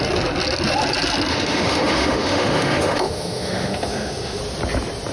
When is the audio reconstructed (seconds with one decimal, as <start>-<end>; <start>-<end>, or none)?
1.3-4.4